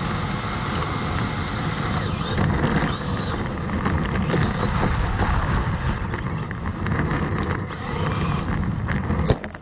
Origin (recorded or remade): recorded